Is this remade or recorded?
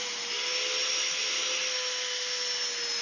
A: recorded